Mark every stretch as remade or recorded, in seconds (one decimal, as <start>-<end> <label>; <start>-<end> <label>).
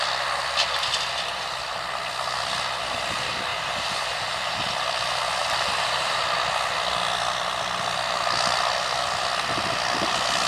0.0-3.5 recorded; 3.5-4.6 remade; 4.6-5.4 recorded; 5.4-6.2 remade; 6.2-10.5 recorded